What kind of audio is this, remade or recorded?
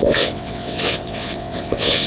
remade